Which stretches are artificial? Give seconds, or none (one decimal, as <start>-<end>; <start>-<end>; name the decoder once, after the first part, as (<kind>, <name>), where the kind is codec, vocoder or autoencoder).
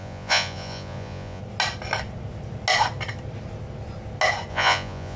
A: 0.0-1.4 (vocoder, Vocos); 4.5-5.2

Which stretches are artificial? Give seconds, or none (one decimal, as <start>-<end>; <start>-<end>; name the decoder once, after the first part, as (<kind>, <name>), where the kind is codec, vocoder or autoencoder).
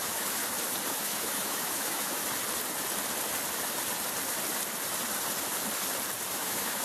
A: 0.0-0.4 (autoencoder, DAC-VAE); 0.9-2.2; 6.3-6.8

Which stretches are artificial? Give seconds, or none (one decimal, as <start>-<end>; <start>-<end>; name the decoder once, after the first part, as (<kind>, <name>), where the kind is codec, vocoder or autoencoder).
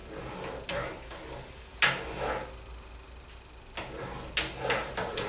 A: 0.7-1.7 (codec, DAC)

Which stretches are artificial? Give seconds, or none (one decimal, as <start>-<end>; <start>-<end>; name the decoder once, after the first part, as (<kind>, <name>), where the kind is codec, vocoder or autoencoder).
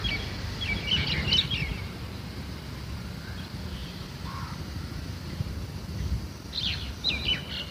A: 1.7-2.6 (vocoder, BigVGAN v2); 3.8-5.5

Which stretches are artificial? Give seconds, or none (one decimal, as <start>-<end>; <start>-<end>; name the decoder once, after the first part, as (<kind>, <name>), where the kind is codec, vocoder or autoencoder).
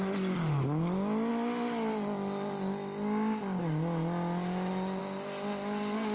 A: none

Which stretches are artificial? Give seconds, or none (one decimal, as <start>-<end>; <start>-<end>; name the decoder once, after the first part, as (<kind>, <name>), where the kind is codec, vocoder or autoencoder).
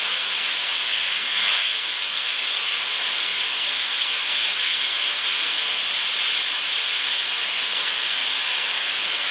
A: 0.0-5.8 (codec, SNAC); 6.8-9.3